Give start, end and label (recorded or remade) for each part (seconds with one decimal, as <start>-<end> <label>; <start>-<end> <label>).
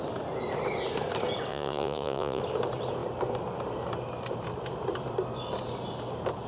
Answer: 0.0-1.5 recorded; 1.5-2.4 remade; 2.4-6.5 recorded